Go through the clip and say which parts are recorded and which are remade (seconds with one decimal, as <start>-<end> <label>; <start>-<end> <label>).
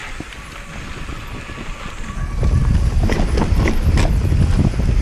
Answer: 0.0-5.0 recorded